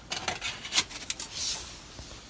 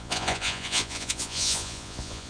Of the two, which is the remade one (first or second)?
second